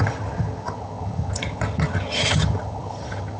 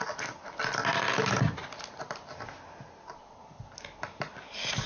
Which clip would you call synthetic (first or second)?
first